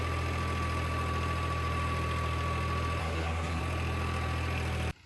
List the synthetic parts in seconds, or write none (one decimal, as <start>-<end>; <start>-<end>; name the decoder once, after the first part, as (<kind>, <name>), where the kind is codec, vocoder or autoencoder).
3.0-3.6 (codec, SNAC)